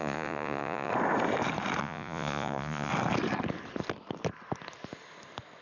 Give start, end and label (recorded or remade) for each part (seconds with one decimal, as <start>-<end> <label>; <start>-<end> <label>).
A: 0.0-0.9 remade; 0.9-1.8 recorded; 1.8-2.9 remade; 2.9-5.6 recorded